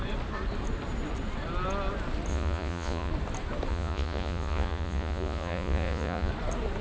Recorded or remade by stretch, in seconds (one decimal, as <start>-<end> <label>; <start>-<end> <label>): 0.0-2.3 recorded; 2.3-3.1 remade; 3.1-3.7 recorded; 3.7-6.3 remade; 6.3-6.8 recorded